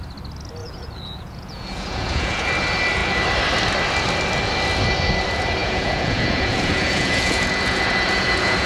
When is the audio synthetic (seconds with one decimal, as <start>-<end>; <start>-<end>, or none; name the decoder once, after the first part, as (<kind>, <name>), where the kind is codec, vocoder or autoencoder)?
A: 0.6-2.5 (vocoder, Vocos); 5.6-8.7